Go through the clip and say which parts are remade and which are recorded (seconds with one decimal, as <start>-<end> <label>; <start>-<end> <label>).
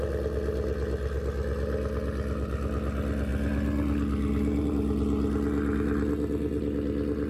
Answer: 0.0-7.3 recorded